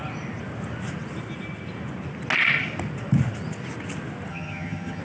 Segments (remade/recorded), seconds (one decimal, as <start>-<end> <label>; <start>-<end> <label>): 0.0-4.3 recorded; 4.3-5.0 remade

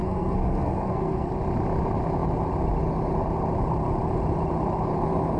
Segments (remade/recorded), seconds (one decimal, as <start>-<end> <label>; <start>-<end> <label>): 0.0-1.3 remade; 1.3-5.4 recorded

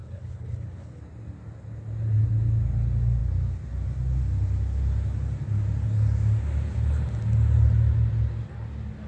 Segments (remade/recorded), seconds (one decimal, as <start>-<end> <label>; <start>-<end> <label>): 0.0-1.0 remade; 1.0-9.1 recorded

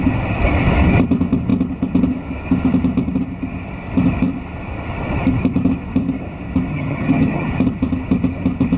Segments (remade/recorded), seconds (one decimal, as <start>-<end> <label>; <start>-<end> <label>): 0.0-6.7 recorded; 6.7-7.5 remade; 7.5-8.8 recorded

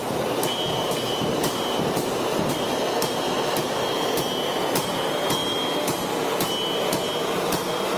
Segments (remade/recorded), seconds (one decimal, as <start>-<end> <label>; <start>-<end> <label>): 0.0-0.8 recorded; 0.8-2.8 remade; 2.8-8.0 recorded

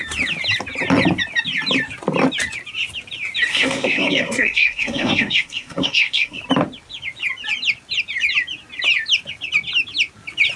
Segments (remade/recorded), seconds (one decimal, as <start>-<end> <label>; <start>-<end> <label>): 0.0-3.5 recorded; 3.5-6.4 remade; 6.4-10.6 recorded

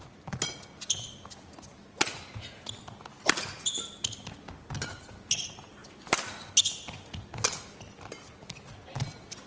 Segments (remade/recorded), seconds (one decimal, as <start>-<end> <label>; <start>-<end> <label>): 0.0-9.5 recorded